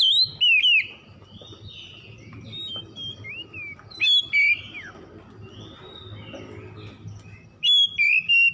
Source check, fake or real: real